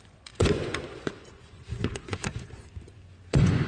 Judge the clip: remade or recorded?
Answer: remade